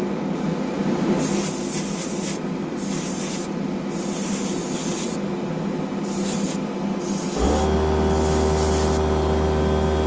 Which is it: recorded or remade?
recorded